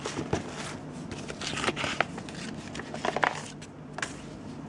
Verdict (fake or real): real